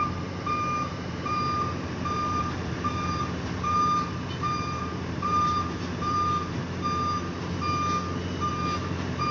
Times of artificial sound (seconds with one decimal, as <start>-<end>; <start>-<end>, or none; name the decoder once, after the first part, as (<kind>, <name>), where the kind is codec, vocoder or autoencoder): 0.0-6.6 (vocoder, BigVGAN v2); 8.5-9.3